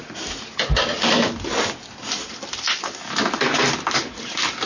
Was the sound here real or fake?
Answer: real